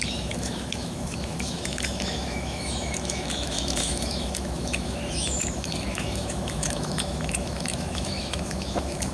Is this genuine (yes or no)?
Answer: no